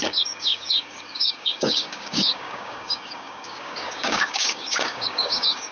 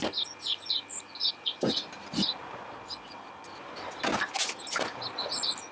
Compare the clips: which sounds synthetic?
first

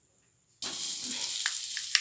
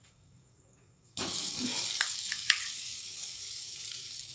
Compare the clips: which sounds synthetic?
second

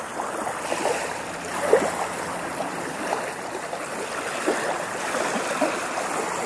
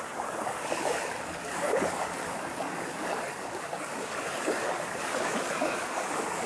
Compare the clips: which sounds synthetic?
second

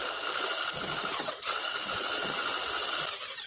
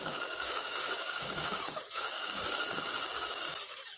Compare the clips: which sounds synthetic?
second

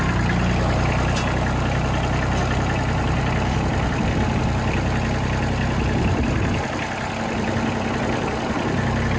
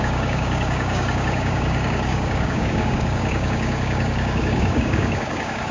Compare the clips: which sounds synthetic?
second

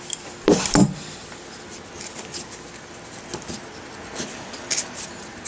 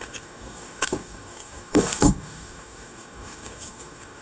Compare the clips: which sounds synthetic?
second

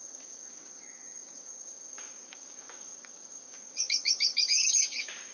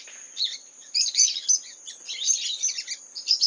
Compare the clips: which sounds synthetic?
first